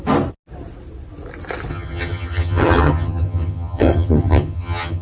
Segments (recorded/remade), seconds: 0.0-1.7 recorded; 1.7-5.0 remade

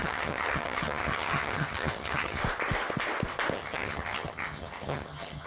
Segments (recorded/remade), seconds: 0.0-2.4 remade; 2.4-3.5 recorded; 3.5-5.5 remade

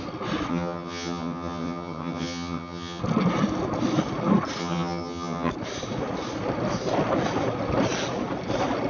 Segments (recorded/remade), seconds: 0.0-0.5 recorded; 0.5-3.0 remade; 3.0-4.6 recorded; 4.6-5.5 remade; 5.5-8.9 recorded

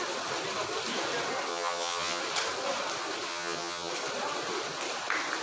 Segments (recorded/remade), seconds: 0.0-1.5 recorded; 1.5-2.2 remade; 2.2-3.3 recorded; 3.3-3.9 remade; 3.9-5.4 recorded

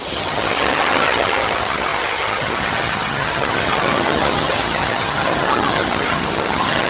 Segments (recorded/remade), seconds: 0.0-6.9 remade

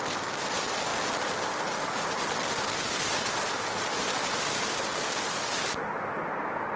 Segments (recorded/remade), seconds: 0.0-6.8 recorded

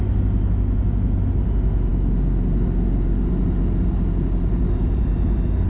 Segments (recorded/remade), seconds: 0.0-5.7 recorded